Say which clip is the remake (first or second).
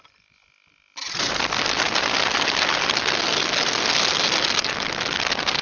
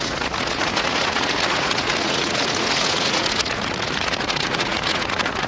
second